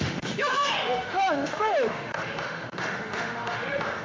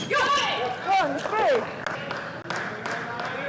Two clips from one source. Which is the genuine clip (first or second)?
second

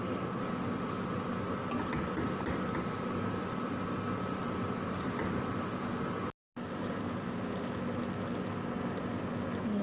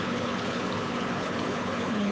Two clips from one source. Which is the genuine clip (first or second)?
first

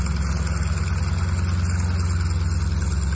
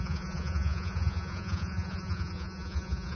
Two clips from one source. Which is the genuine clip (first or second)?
first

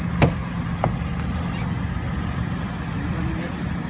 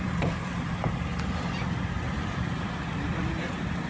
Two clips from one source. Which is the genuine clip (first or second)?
first